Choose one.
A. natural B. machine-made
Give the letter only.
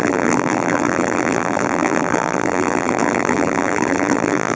B